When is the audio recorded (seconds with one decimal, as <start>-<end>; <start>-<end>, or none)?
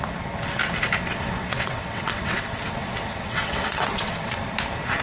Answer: 0.0-1.4; 4.4-5.0